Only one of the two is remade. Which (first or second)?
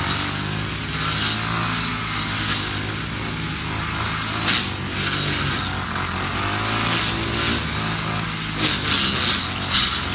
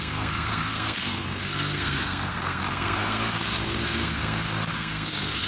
second